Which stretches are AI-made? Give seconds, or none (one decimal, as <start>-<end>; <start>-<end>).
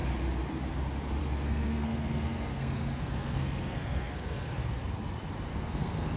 1.2-4.7; 5.5-6.2